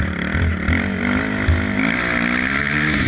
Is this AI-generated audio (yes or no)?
no